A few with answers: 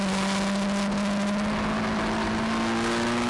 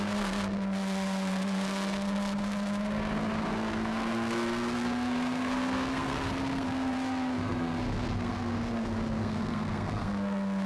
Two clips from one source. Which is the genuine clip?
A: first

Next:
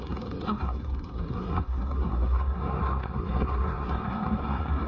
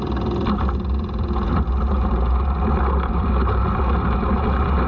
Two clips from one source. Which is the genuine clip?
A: second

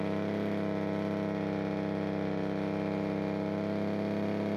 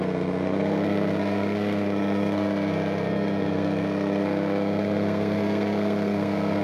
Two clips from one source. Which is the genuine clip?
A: first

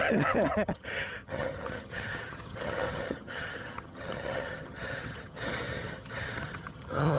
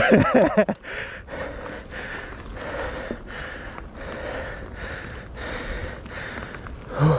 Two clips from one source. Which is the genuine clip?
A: second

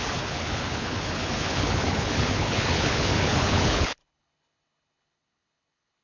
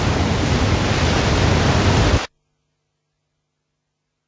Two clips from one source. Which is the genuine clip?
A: second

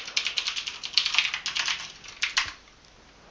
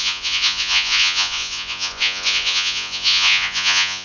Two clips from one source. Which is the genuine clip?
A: first